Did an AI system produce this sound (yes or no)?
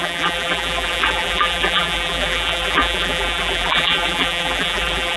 yes